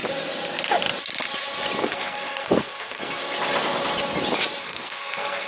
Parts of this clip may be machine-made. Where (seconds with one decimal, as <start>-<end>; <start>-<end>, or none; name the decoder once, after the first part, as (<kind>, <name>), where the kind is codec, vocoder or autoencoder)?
1.8-3.2 (codec, SNAC); 4.6-5.5